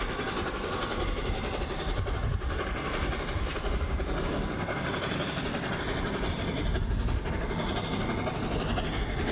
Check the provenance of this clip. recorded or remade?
recorded